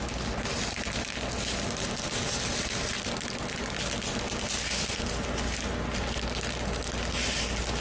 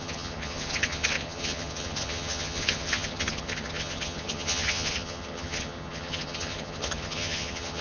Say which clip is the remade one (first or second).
second